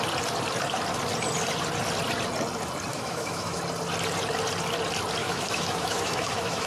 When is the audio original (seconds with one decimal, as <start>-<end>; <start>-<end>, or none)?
0.0-2.9; 3.6-5.2